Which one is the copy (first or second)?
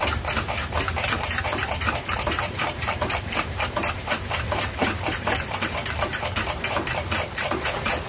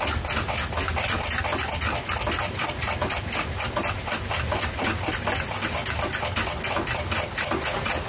first